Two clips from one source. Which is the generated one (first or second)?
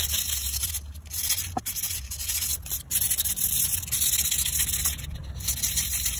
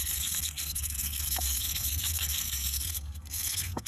second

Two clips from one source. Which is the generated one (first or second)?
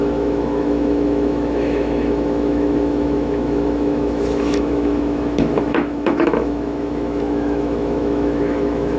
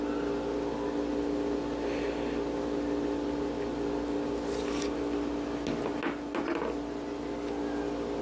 first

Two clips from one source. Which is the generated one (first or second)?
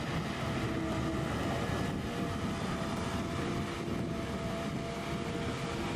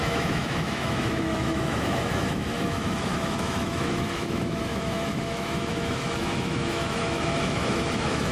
second